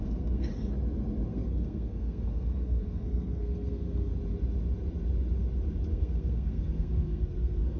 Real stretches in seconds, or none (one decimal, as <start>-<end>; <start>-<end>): 0.5-1.3; 4.1-5.9